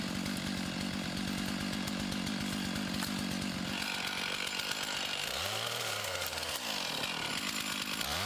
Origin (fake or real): real